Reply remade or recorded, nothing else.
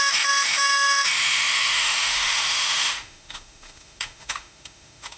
remade